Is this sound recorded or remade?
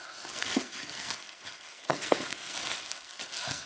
remade